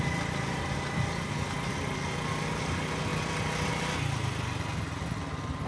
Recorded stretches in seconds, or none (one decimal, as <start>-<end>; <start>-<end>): 0.0-5.7